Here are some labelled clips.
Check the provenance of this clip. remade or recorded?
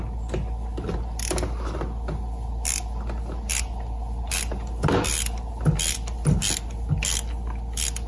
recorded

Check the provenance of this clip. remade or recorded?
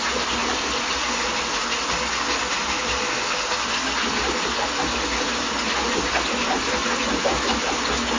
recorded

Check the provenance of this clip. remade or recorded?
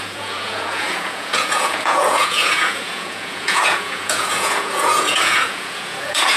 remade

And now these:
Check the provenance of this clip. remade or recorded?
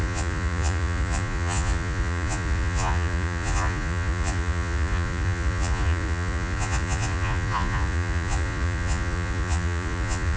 remade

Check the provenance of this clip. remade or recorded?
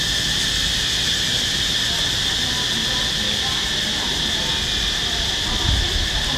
recorded